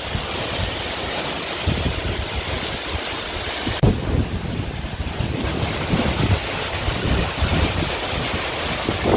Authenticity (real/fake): real